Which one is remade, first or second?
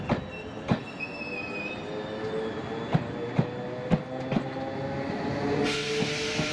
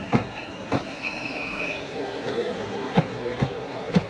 second